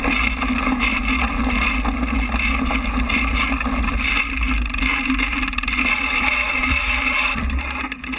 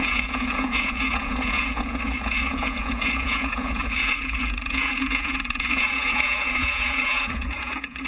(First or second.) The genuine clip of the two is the first